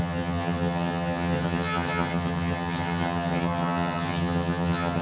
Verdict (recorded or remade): remade